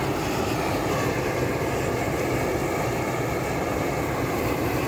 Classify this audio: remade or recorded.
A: recorded